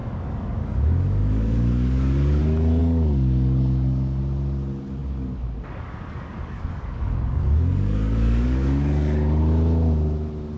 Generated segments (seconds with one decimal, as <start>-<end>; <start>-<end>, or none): 0.0-2.4; 2.8-4.2; 5.0-9.4